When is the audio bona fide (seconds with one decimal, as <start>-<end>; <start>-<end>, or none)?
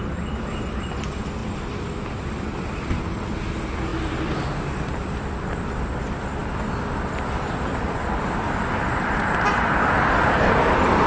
0.0-11.1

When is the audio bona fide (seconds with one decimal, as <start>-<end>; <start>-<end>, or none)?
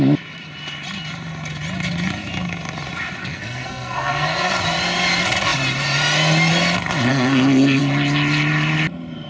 0.0-3.2; 4.5-7.1; 7.8-9.3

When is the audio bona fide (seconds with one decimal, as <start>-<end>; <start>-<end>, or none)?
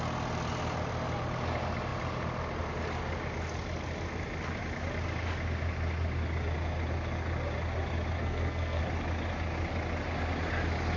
0.0-8.2; 8.8-11.0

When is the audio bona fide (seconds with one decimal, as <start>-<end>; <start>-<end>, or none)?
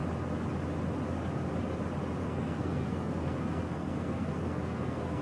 0.0-2.2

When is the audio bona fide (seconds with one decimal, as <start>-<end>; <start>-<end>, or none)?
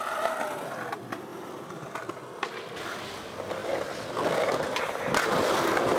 0.0-6.0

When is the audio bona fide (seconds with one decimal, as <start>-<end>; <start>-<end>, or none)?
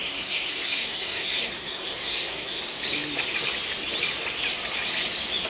2.6-5.5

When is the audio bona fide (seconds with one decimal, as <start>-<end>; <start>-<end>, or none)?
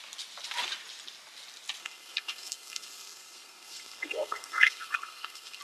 0.0-1.8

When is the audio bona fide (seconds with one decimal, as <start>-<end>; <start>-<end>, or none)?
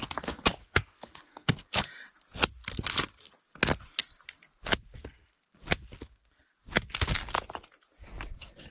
0.0-0.6; 1.6-8.7